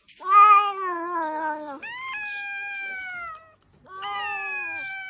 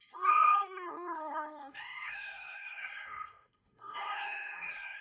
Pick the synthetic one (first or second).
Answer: second